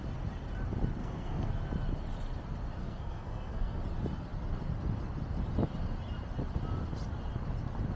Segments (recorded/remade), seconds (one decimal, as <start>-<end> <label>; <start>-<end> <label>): 0.0-1.0 recorded; 1.0-1.5 remade; 1.5-2.8 recorded; 2.8-3.8 remade; 3.8-8.0 recorded